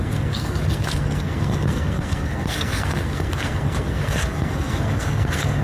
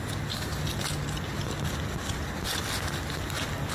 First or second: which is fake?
first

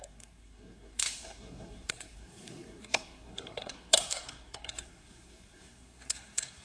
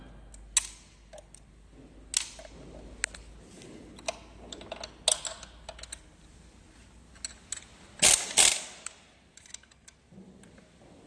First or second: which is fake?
first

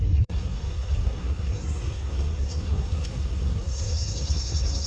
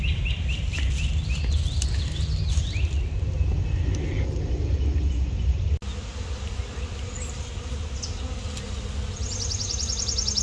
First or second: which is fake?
first